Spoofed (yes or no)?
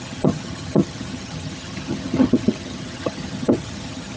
yes